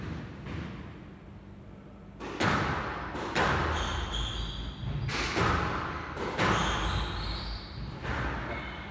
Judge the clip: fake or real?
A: real